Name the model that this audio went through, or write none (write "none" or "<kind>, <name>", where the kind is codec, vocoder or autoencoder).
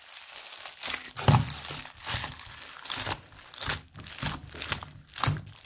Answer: none